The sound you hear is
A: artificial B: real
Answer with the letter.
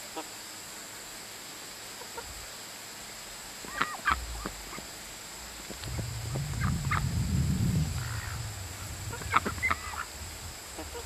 B